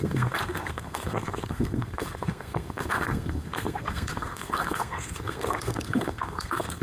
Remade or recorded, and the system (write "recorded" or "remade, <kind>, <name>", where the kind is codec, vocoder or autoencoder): remade, codec, SNAC